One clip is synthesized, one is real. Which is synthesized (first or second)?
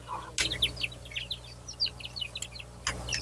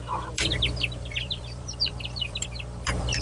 second